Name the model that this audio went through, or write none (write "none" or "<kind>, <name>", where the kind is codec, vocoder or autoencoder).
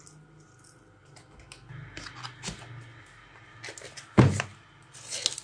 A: none